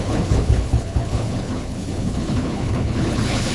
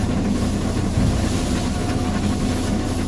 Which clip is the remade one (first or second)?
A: first